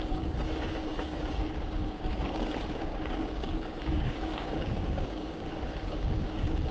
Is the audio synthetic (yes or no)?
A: yes